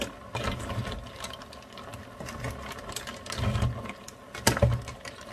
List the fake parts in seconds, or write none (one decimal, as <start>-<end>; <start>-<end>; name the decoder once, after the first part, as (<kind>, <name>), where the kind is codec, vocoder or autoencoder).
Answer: none